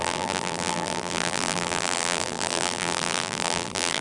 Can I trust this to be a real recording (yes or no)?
no